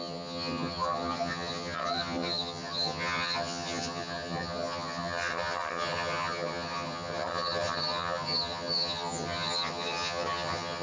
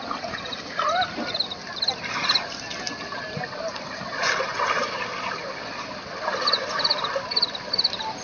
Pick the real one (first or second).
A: second